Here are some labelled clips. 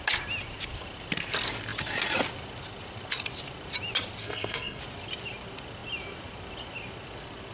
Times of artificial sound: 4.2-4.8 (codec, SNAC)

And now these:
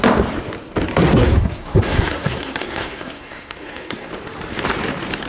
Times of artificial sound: 0.9-4.1 (codec, SNAC)